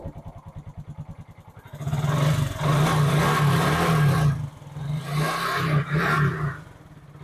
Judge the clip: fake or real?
real